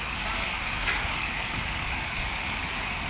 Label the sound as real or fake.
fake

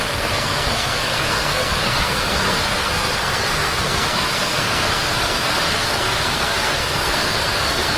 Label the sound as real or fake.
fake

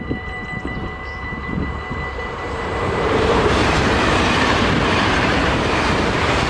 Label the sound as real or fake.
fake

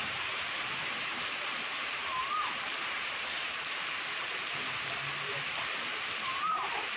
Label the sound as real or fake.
fake